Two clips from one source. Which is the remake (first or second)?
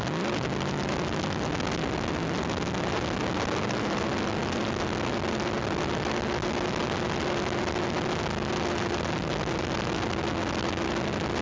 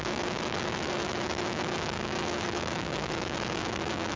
second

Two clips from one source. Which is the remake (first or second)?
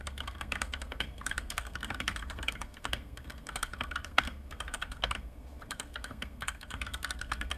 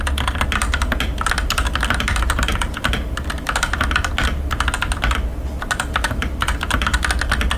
first